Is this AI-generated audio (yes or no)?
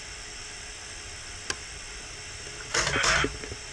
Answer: no